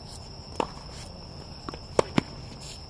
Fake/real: real